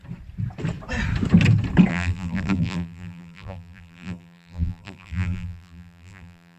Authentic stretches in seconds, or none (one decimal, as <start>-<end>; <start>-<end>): 0.0-1.9